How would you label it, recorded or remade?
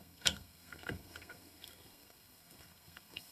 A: remade